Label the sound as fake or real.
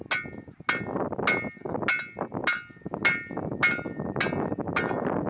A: real